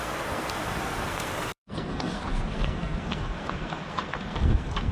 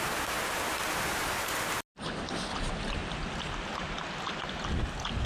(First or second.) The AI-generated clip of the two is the first